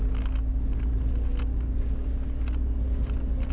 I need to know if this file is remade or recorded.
recorded